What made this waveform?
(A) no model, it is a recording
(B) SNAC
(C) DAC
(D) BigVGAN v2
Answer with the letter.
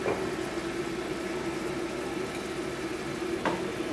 D